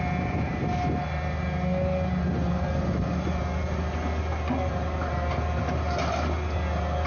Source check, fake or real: real